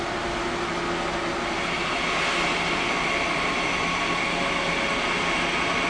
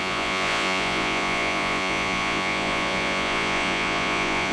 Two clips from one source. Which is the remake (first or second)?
second